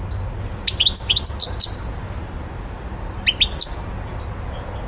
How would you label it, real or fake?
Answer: real